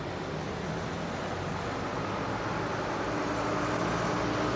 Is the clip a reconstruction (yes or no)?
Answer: no